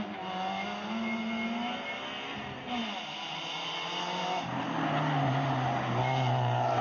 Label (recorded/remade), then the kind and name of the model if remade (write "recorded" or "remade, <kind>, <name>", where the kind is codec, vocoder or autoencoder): recorded